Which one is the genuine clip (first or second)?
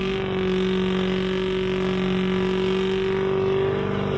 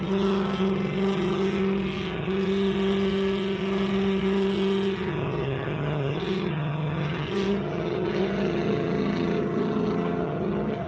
first